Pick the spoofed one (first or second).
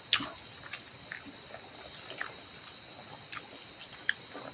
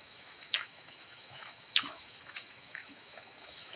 second